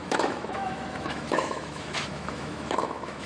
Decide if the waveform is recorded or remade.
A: remade